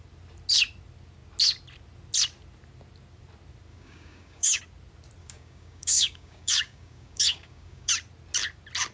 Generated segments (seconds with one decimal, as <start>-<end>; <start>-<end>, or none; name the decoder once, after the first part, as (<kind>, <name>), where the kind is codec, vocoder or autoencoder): 3.7-4.6 (codec, DAC); 5.2-7.9